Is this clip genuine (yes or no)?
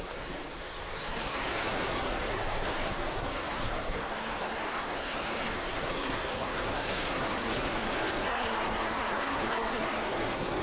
no